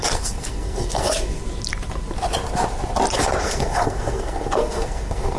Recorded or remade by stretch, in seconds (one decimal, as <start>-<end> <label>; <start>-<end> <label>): 0.0-1.4 remade; 1.4-3.4 recorded; 3.4-5.4 remade